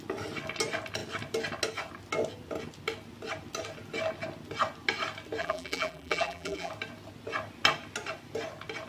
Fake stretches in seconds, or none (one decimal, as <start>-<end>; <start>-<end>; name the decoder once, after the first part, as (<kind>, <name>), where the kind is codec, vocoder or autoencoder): 5.4-6.7 (vocoder, BigVGAN v2)